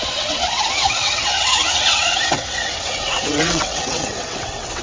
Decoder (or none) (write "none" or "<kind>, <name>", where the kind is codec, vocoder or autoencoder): vocoder, WaveNeXt